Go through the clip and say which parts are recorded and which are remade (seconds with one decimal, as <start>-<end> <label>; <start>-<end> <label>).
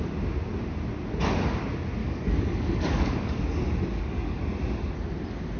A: 0.0-2.0 recorded; 2.0-3.4 remade; 3.4-3.9 recorded; 3.9-4.4 remade; 4.4-5.6 recorded